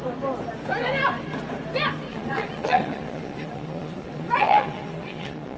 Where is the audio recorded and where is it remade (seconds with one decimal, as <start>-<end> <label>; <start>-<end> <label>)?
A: 0.0-2.1 recorded; 2.1-5.6 remade